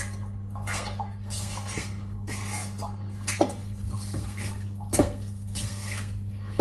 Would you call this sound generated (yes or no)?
yes